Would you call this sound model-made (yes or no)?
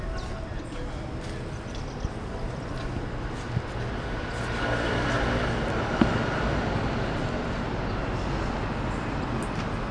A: no